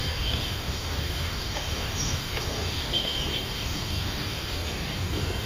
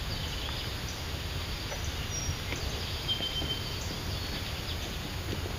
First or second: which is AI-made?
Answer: first